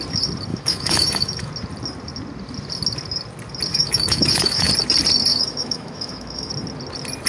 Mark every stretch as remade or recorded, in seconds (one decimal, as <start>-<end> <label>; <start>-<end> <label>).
0.0-0.5 recorded; 0.5-1.5 remade; 1.5-3.7 recorded; 3.7-4.7 remade; 4.7-5.3 recorded; 5.3-6.5 remade; 6.5-7.3 recorded